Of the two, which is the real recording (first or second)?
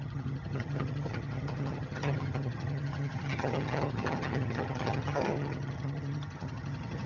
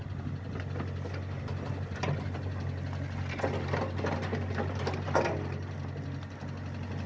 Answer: second